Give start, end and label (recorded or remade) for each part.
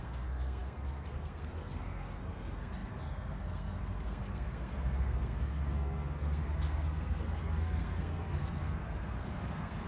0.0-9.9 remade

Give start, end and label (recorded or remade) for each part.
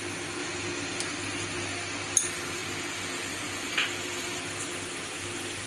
0.0-5.7 recorded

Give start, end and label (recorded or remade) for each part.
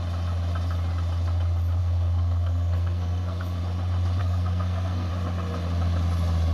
0.0-1.8 recorded; 1.8-3.6 remade; 3.6-4.2 recorded; 4.2-5.1 remade; 5.1-6.5 recorded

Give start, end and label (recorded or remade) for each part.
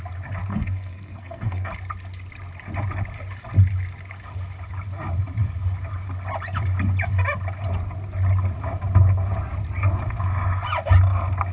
0.0-0.5 recorded; 0.5-1.7 remade; 1.7-11.5 recorded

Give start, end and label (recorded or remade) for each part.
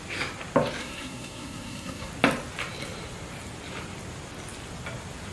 0.0-0.8 recorded; 0.8-2.1 remade; 2.1-5.3 recorded